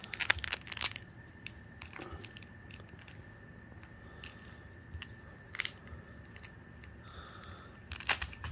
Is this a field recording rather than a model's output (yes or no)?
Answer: yes